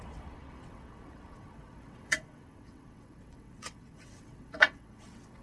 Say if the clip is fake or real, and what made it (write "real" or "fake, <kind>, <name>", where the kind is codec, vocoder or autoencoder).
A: fake, vocoder, WaveNeXt